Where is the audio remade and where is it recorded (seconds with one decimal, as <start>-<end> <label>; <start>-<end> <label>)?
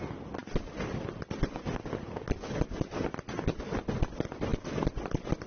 0.0-5.5 recorded